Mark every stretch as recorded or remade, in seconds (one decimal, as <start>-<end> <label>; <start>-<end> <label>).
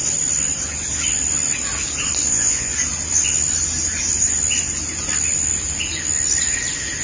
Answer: 0.0-2.3 recorded; 2.3-2.7 remade; 2.7-7.0 recorded